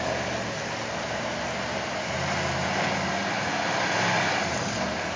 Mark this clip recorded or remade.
recorded